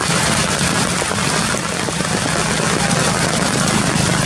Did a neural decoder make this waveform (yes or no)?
no